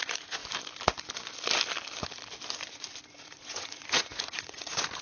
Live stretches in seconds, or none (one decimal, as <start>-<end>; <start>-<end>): 0.4-3.1